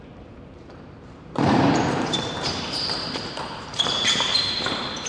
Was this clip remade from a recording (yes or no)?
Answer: yes